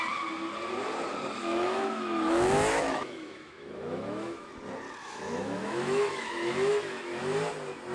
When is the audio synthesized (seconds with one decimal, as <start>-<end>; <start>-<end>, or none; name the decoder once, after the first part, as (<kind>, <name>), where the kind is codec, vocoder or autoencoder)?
1.4-4.5 (autoencoder, DAC-VAE); 5.0-7.2